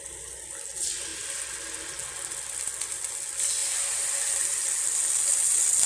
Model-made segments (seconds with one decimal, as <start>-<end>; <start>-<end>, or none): none